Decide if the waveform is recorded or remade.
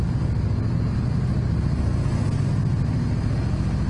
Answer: recorded